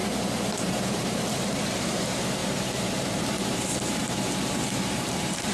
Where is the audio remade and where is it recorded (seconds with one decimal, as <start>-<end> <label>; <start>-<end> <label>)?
0.0-0.5 recorded; 0.5-5.5 remade